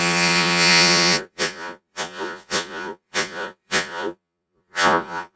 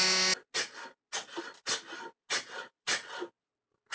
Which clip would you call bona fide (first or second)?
second